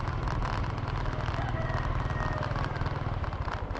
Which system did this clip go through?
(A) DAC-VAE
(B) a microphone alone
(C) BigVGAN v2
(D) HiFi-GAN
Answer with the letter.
B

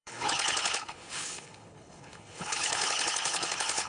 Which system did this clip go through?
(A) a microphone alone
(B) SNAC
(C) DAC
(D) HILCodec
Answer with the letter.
D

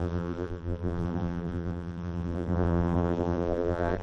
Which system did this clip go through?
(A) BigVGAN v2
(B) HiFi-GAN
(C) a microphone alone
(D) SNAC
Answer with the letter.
A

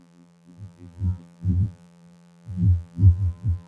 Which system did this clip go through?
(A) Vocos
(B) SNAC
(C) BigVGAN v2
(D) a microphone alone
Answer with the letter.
C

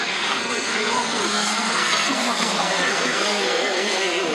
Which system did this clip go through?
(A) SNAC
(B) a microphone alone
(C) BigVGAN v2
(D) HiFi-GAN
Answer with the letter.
A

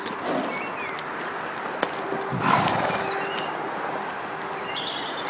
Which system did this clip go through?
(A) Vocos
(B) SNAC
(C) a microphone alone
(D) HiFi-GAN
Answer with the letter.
C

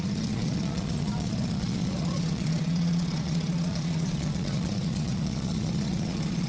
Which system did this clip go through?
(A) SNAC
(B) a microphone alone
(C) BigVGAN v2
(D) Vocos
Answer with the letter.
D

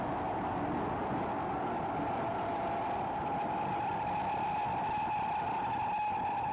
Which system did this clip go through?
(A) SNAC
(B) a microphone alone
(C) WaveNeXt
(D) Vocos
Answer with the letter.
B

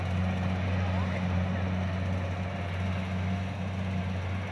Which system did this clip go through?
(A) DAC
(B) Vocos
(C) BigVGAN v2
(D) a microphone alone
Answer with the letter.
D